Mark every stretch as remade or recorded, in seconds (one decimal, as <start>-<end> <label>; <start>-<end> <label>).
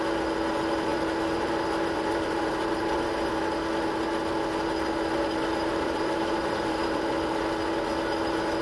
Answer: 0.0-0.9 recorded; 0.9-3.3 remade; 3.3-5.5 recorded; 5.5-7.4 remade; 7.4-8.6 recorded